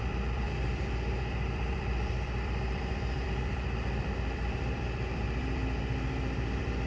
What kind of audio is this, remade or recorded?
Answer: remade